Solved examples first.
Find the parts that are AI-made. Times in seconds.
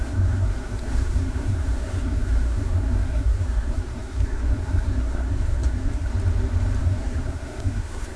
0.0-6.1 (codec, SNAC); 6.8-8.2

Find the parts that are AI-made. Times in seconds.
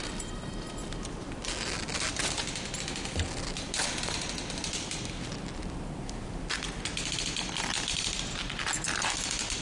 none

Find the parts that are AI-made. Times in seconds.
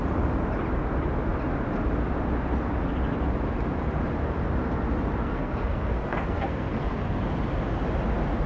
5.2-7.2 (codec, SNAC)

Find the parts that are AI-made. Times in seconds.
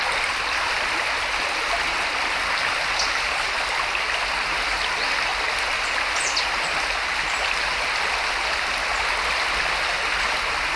none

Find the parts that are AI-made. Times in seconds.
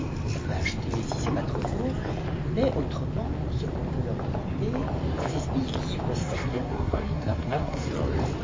6.2-7.9 (codec, SNAC)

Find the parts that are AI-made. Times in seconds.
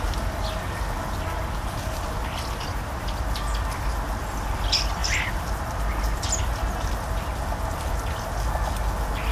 none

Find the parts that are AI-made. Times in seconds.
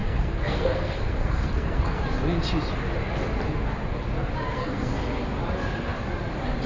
0.0-2.0 (codec, SNAC); 4.5-5.2